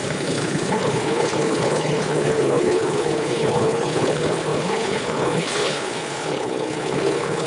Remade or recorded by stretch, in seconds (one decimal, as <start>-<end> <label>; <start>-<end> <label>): 0.0-7.5 remade